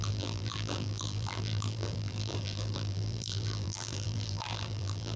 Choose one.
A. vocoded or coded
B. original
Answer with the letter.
A